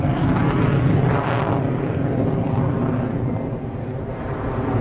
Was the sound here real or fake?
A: real